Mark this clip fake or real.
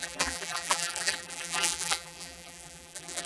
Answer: fake